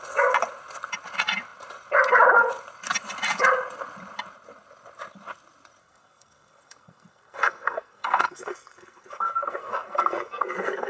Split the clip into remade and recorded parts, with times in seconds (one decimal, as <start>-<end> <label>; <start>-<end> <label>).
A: 0.0-5.8 recorded; 5.8-10.9 remade